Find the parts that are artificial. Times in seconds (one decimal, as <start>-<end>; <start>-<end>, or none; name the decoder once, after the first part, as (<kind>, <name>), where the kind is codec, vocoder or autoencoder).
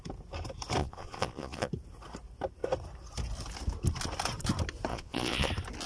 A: 0.8-1.7 (vocoder, Vocos); 4.9-5.5